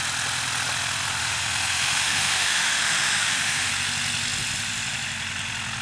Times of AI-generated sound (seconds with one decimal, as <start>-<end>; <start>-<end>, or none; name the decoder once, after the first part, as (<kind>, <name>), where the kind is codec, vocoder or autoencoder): 1.2-3.7 (autoencoder, DAC-VAE)

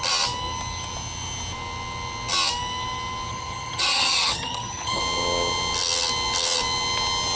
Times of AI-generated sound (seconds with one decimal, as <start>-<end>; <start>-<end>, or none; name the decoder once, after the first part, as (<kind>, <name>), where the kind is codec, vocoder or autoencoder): 3.3-5.0 (vocoder, HiFi-GAN)

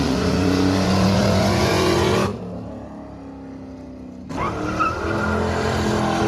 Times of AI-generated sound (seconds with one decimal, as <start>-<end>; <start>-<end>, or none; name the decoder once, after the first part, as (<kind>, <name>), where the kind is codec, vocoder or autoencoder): 0.0-2.3 (vocoder, Vocos)

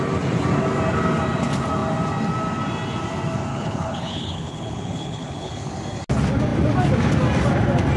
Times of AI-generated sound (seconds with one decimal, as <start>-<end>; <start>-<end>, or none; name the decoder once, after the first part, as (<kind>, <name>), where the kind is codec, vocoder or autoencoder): 3.5-5.7 (codec, HILCodec)